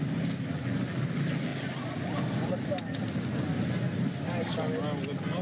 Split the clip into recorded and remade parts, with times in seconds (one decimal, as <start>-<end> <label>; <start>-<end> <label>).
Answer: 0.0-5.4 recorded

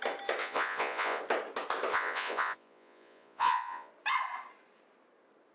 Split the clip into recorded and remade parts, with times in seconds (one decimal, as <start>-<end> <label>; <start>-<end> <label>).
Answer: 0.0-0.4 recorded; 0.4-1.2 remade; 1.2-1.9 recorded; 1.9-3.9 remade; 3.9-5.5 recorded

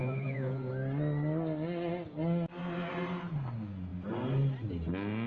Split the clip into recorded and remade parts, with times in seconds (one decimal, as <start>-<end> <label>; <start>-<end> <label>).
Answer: 0.0-0.7 remade; 0.7-5.3 recorded

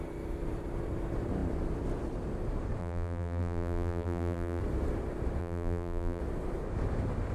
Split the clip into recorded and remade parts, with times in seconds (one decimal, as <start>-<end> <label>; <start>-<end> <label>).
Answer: 0.0-2.8 recorded; 2.8-4.6 remade; 4.6-5.4 recorded; 5.4-6.2 remade; 6.2-7.3 recorded